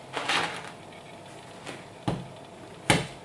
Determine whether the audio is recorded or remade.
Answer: recorded